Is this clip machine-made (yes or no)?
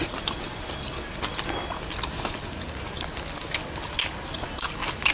no